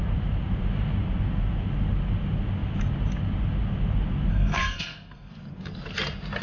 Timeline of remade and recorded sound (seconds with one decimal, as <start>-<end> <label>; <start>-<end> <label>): 0.0-4.3 recorded; 4.3-5.3 remade; 5.3-6.4 recorded